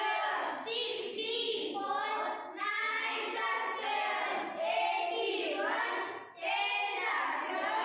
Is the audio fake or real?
real